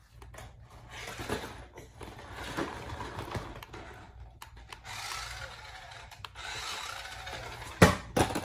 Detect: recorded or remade recorded